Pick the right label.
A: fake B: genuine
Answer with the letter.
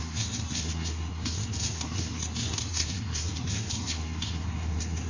A